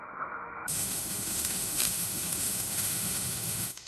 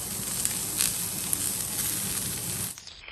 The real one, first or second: second